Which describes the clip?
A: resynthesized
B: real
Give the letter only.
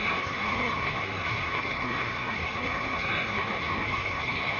A